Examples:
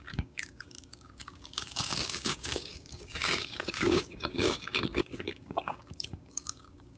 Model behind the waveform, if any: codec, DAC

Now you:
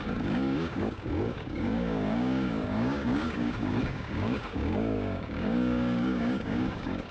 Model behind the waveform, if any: codec, DAC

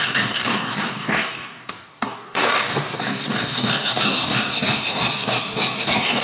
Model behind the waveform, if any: codec, DAC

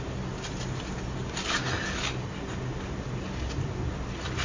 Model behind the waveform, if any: none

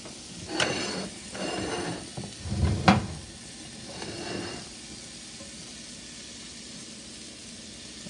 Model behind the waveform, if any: none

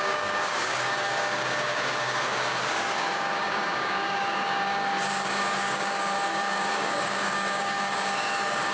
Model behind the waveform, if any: codec, DAC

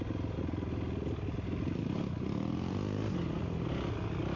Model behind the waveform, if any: none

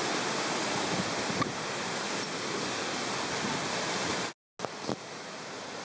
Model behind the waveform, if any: none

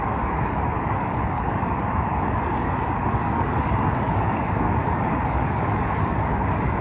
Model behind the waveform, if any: codec, DAC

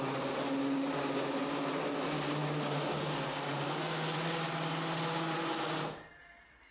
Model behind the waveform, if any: none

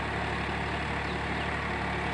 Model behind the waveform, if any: none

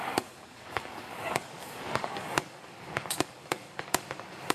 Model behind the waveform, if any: codec, DAC